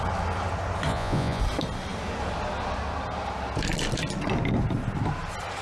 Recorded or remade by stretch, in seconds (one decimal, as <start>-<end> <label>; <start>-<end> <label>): 0.0-0.9 recorded; 0.9-1.4 remade; 1.4-5.6 recorded